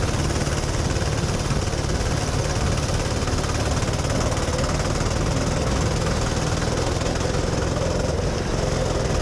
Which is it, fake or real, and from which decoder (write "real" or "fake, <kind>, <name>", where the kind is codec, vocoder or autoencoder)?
real